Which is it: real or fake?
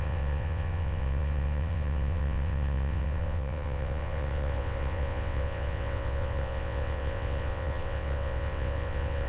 fake